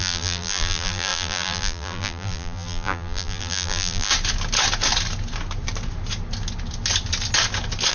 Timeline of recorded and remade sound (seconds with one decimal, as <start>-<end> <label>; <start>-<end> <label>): 0.0-4.1 remade; 4.1-7.9 recorded